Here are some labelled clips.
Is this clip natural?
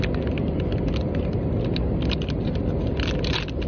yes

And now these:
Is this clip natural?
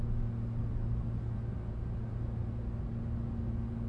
yes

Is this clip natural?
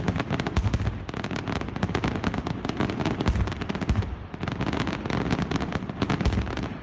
yes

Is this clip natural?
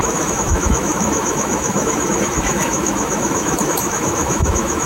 no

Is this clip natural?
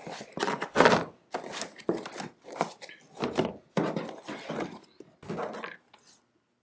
yes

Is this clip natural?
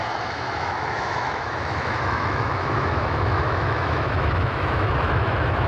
no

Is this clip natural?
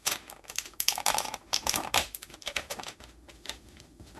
no